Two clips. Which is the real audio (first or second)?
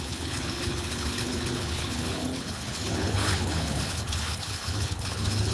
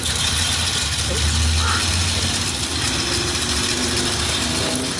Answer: second